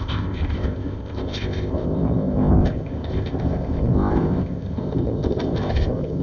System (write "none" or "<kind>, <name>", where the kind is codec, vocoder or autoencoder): codec, ZipCodec